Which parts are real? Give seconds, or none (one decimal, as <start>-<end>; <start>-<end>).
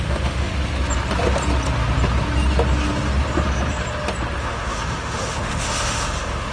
0.5-4.4